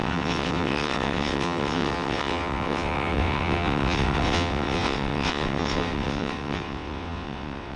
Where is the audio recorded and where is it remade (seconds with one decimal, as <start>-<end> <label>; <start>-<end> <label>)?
0.0-7.8 remade